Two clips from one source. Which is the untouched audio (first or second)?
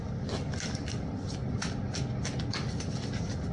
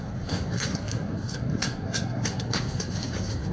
first